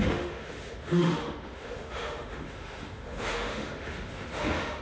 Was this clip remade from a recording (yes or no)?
yes